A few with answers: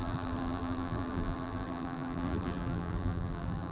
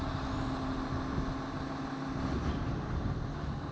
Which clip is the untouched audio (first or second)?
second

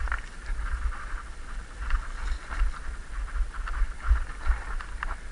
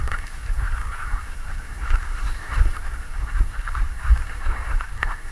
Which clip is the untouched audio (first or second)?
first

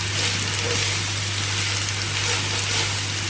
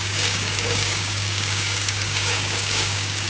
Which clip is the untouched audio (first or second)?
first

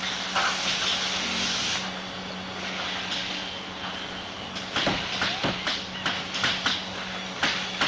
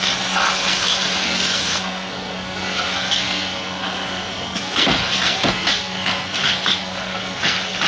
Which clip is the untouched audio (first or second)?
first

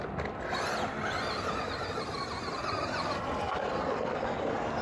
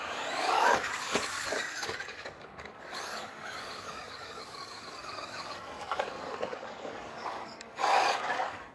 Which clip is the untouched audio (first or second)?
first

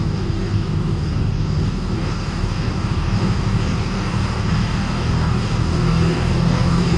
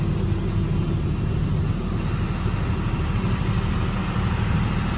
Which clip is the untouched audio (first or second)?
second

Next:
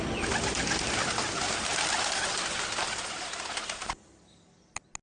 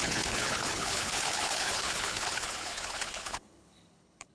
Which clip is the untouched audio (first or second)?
first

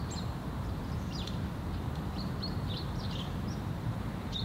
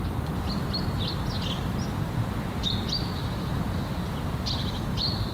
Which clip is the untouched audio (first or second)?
second